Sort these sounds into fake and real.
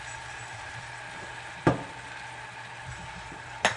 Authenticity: real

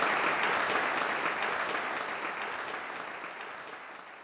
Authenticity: real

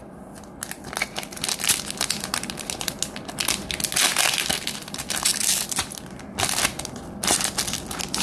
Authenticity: real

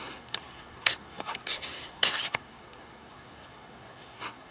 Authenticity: fake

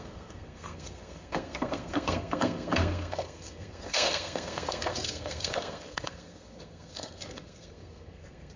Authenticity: fake